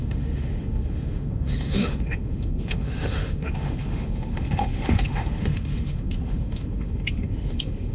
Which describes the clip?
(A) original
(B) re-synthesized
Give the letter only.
B